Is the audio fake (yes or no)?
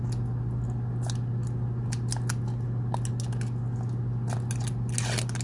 no